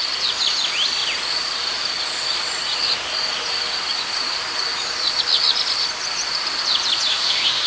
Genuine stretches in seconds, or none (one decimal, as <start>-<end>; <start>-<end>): 0.0-7.1